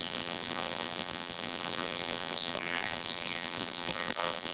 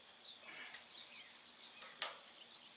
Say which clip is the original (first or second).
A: second